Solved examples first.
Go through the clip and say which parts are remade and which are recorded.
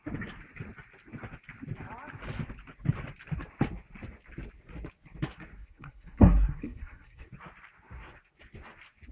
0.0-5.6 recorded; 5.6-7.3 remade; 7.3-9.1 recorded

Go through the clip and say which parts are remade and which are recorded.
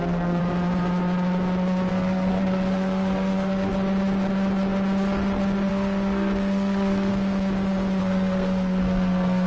0.0-0.4 remade; 0.4-1.9 recorded; 1.9-3.7 remade; 3.7-5.7 recorded; 5.7-7.1 remade; 7.1-8.0 recorded; 8.0-9.5 remade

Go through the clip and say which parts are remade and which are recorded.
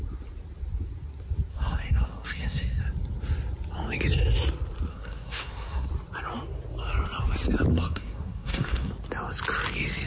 0.0-1.5 recorded; 1.5-2.8 remade; 2.8-4.9 recorded; 4.9-5.9 remade; 5.9-7.7 recorded; 7.7-8.9 remade; 8.9-10.1 recorded